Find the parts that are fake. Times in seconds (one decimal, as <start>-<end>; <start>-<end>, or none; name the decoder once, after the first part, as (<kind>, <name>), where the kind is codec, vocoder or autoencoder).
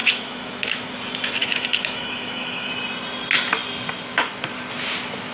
0.0-0.9 (autoencoder, DAC-VAE); 1.4-2.7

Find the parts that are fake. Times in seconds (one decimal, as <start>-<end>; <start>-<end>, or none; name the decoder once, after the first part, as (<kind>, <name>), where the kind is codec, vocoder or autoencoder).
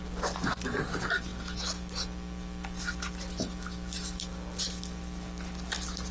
none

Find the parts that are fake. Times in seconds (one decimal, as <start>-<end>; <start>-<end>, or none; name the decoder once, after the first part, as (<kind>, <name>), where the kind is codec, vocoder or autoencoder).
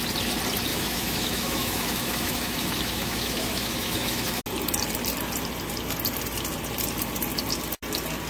0.7-4.4 (autoencoder, DAC-VAE)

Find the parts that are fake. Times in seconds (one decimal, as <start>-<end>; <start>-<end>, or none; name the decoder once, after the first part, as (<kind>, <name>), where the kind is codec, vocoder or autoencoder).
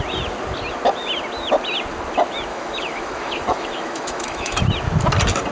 2.5-4.6 (autoencoder, DAC-VAE)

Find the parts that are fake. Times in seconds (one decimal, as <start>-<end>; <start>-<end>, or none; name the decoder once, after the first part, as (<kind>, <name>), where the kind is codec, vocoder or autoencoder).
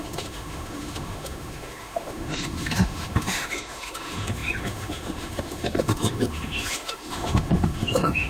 0.0-8.3 (autoencoder, DAC-VAE)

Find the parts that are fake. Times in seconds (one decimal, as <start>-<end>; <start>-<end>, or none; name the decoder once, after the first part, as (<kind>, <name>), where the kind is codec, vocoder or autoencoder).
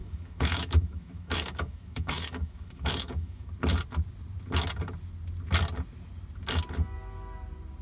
0.0-3.5 (autoencoder, DAC-VAE)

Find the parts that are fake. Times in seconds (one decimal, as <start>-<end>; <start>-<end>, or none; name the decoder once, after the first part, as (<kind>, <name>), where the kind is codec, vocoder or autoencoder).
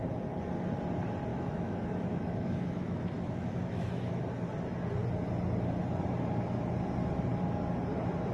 1.3-4.2 (autoencoder, DAC-VAE)